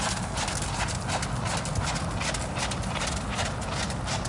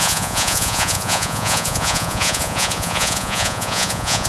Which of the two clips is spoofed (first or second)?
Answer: second